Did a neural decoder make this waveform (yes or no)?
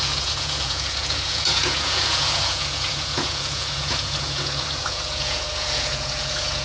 yes